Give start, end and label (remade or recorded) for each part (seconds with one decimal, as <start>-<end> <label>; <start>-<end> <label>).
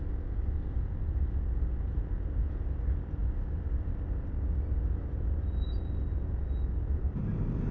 0.0-7.7 remade